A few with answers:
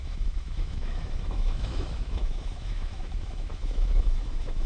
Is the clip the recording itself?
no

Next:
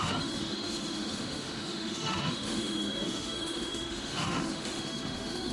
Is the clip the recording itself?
no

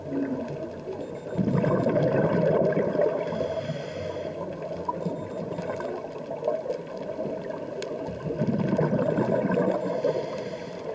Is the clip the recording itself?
yes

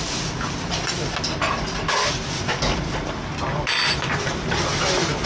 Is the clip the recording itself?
yes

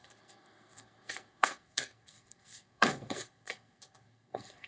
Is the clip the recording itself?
no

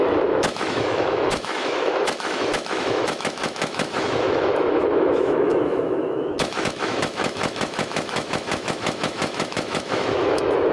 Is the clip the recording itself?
no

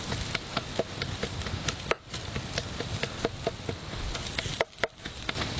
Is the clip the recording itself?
yes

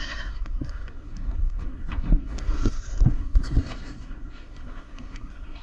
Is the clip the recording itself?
no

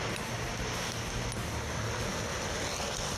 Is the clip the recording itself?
yes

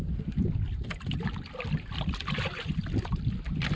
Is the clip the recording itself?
no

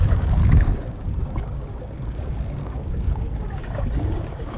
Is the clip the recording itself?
no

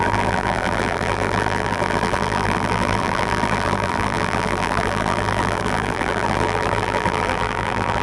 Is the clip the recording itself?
no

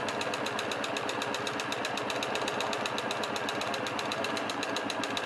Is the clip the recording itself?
yes